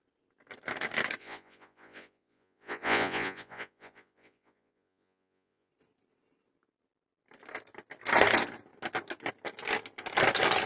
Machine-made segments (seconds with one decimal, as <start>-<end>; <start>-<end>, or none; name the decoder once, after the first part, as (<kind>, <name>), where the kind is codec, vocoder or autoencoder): 1.2-5.7 (vocoder, Vocos)